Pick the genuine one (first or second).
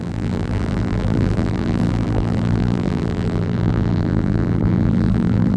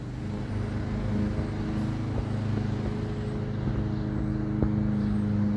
second